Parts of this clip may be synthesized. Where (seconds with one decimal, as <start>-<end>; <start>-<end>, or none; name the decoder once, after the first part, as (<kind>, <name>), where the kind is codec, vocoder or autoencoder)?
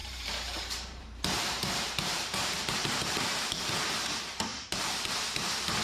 0.0-3.5 (vocoder, BigVGAN v2); 4.5-5.1